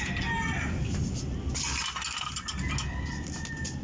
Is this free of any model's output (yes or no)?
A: yes